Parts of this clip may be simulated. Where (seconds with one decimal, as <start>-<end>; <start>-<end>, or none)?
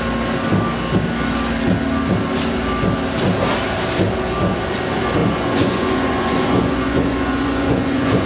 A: 5.2-8.3